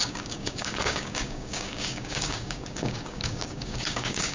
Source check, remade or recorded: remade